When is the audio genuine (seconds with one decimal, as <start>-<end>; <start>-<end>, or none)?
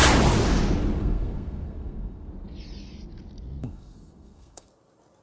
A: 0.0-1.0; 2.3-3.6; 4.7-5.2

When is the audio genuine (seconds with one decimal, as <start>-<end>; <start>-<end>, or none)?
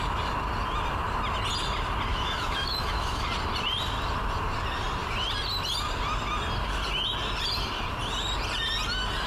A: 0.0-2.1; 3.3-9.3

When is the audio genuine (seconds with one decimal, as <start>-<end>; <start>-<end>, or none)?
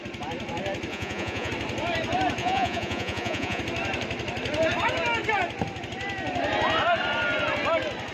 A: 0.0-0.9; 1.5-2.4; 3.6-8.1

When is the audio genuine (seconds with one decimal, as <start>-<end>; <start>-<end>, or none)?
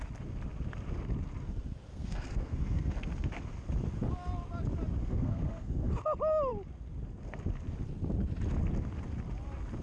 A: 0.0-1.9; 3.1-5.0; 5.9-9.8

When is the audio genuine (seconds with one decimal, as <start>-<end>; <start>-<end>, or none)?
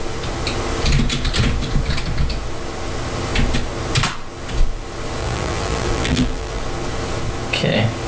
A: 0.0-5.2; 6.6-8.1